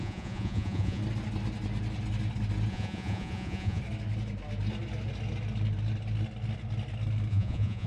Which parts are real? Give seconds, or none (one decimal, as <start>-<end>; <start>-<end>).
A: 1.0-2.7; 3.8-7.3